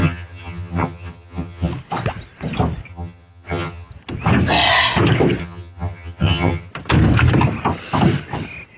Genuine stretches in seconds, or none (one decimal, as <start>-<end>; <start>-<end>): 1.7-2.9; 3.9-5.4; 6.7-8.8